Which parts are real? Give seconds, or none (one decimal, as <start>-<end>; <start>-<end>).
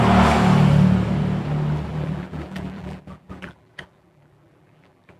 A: 0.0-1.9